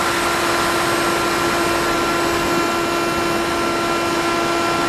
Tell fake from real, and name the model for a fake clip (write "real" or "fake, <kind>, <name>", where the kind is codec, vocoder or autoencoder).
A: real